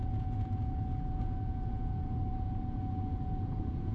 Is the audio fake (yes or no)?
yes